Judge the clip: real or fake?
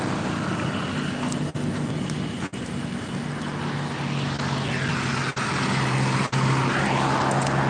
real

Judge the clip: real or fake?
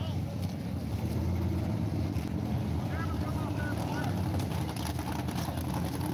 real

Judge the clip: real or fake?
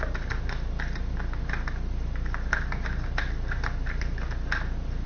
real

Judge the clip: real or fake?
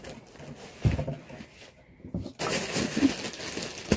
real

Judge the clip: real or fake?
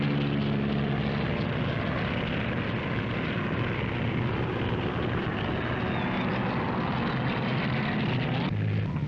real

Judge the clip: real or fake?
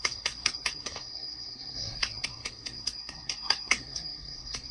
fake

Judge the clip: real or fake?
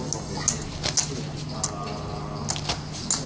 real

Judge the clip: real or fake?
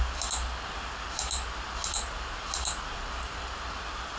real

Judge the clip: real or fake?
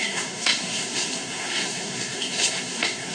fake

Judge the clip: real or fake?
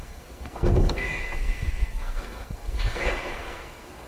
fake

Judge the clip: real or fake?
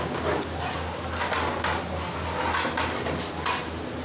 real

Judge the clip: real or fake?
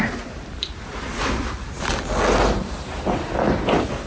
real